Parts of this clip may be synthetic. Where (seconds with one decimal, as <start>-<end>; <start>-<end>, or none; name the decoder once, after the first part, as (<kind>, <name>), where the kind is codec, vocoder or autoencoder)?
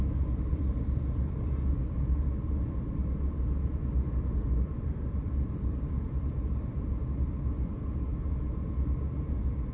0.0-3.8 (vocoder, BigVGAN v2); 4.5-9.7